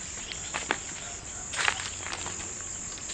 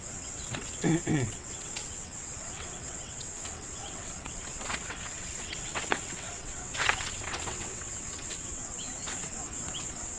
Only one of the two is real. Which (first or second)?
first